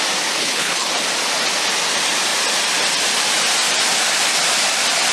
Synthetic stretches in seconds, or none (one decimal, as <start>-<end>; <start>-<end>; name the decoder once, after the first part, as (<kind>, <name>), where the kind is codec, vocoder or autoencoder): 0.4-0.9 (codec, HILCodec)